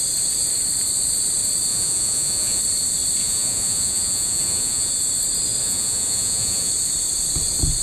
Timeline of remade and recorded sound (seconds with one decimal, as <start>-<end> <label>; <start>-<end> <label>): 0.0-1.7 recorded; 1.7-2.6 remade; 2.6-3.2 recorded; 3.2-4.9 remade; 4.9-5.6 recorded; 5.6-6.7 remade; 6.7-7.8 recorded